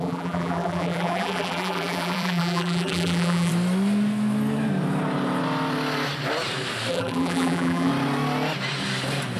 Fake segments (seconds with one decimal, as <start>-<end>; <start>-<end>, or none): 0.0-3.5; 6.9-7.9